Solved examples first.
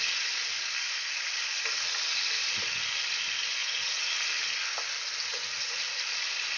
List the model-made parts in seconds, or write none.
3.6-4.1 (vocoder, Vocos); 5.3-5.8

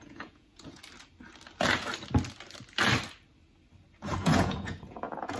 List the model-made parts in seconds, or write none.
0.0-0.8 (vocoder, Vocos); 4.0-5.4

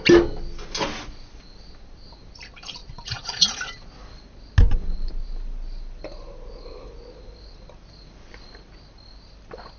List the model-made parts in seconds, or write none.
2.8-3.9 (vocoder, Vocos)

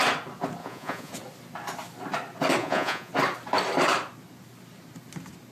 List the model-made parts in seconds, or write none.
0.6-1.1 (vocoder, Vocos); 2.6-3.1

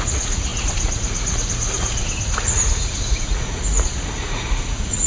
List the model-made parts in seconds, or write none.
0.0-5.1 (vocoder, Vocos)

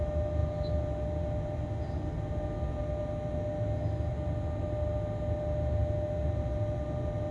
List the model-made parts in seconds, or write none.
none

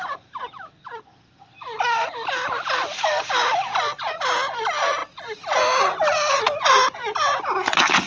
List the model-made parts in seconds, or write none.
none